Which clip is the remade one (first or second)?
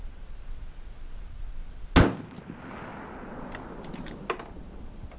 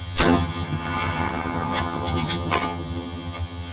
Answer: second